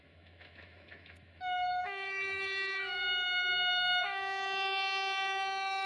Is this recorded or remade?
remade